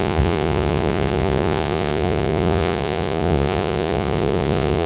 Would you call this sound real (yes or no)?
no